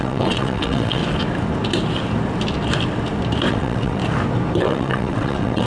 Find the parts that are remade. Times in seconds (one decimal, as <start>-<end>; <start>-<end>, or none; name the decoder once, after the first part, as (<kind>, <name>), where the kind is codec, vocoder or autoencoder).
0.0-1.0 (vocoder, WaveNeXt); 3.5-4.0; 4.6-5.7